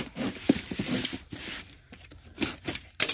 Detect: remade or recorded remade